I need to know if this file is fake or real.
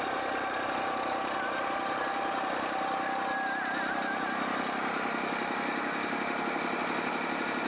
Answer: real